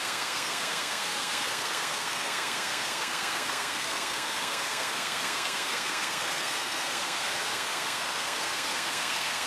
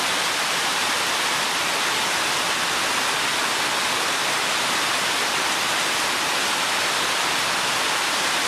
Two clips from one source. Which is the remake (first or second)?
first